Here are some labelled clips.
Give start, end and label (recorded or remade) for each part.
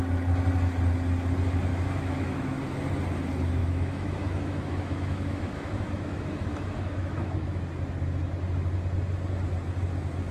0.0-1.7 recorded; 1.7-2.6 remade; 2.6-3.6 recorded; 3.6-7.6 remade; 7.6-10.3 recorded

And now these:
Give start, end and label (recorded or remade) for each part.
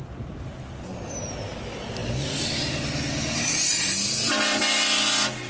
0.0-5.5 recorded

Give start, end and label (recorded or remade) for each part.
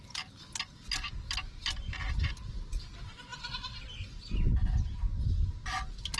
0.0-6.2 recorded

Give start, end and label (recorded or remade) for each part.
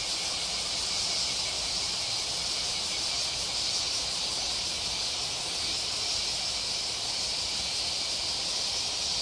0.0-9.2 recorded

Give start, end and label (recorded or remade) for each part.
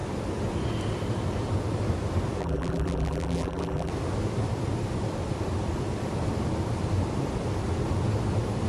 0.0-2.4 recorded; 2.4-3.9 remade; 3.9-8.7 recorded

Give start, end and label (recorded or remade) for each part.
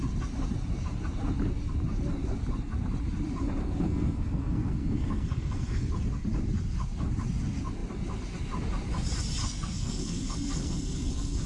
0.0-3.6 recorded; 3.6-5.9 remade; 5.9-9.4 recorded; 9.4-11.5 remade